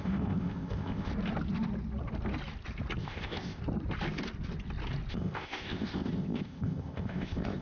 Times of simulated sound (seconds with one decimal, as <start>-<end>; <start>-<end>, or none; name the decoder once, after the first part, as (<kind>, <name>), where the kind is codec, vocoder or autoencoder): 0.0-1.1 (codec, ZipCodec); 3.0-3.6; 5.1-7.6